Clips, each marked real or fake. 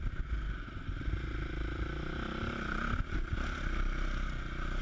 real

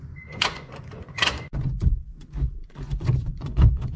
fake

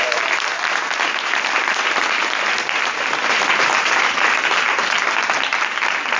real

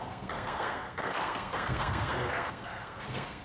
fake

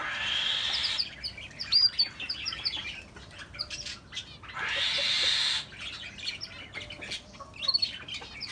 real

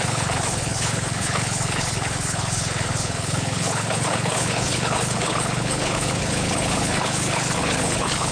fake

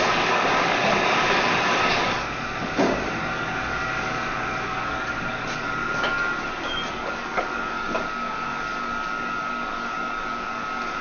fake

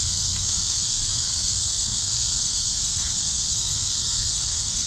fake